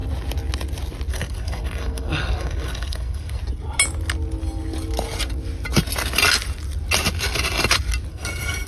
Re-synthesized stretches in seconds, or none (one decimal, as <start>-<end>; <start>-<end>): 1.1-3.4; 8.1-8.7